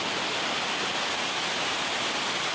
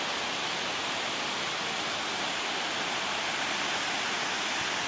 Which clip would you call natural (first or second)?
first